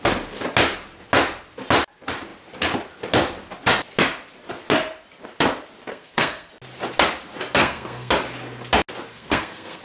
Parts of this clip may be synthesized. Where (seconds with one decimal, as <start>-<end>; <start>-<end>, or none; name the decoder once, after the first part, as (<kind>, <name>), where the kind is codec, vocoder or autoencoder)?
5.9-6.5 (codec, SNAC); 7.6-8.1; 9.1-9.8